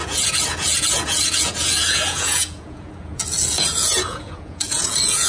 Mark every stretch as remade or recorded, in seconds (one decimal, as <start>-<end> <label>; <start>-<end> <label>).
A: 0.0-5.3 remade